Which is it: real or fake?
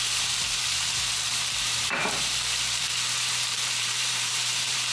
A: fake